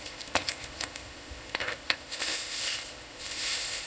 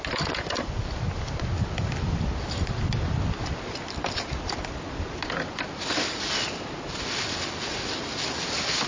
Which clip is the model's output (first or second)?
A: first